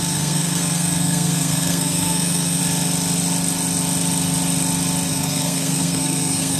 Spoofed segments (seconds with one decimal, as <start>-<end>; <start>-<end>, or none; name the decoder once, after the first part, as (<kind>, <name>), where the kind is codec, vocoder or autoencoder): 0.0-2.6 (codec, SNAC); 5.1-6.6